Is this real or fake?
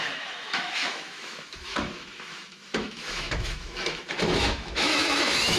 fake